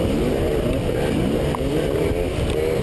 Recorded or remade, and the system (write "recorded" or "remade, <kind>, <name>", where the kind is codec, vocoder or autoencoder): recorded